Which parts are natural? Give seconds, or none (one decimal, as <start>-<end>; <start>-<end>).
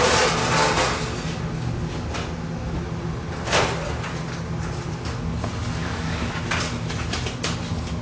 0.0-5.8; 6.4-8.0